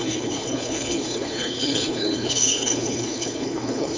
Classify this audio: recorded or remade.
remade